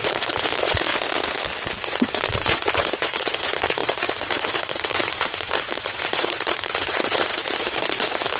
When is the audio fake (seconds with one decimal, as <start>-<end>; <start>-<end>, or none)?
0.0-0.9; 1.8-8.4

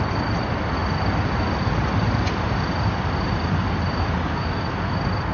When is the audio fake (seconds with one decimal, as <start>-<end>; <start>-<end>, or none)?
none

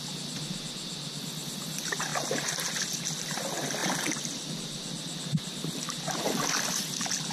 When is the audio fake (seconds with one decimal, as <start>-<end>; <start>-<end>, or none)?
none

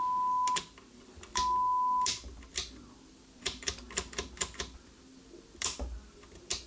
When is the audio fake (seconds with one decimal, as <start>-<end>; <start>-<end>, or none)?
none

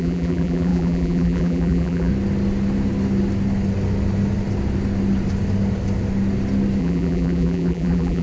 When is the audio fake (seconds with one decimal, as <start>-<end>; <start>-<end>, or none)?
0.0-2.1; 6.8-8.2

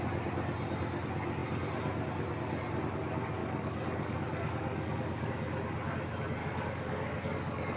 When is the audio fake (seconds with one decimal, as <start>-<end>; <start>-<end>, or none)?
3.4-5.3; 6.4-7.8